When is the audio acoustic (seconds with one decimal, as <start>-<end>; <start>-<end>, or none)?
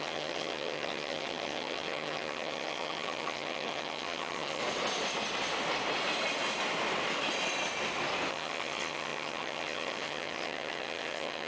4.6-8.3